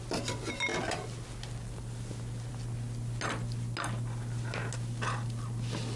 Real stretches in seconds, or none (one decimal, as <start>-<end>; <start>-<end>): 0.0-6.0